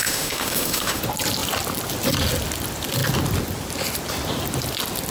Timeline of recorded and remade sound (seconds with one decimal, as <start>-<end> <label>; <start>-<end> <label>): 0.0-1.0 remade; 1.0-5.1 recorded